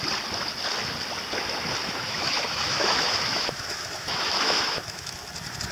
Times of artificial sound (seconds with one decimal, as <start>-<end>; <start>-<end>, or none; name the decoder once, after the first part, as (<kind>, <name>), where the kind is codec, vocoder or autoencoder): 1.8-5.2 (autoencoder, DAC-VAE)

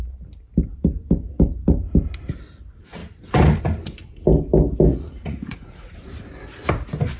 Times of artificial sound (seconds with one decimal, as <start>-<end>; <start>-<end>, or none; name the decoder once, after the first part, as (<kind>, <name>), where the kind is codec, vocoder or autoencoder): 4.9-5.9 (vocoder, Vocos)